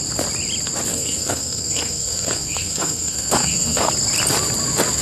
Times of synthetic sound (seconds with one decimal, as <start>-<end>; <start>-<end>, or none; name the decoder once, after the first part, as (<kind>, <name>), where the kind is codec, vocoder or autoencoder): 0.9-3.9 (codec, SNAC)